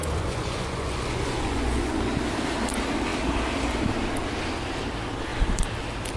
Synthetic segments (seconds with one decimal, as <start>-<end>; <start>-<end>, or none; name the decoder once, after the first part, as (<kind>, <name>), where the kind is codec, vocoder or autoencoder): 0.0-2.0 (vocoder, Vocos)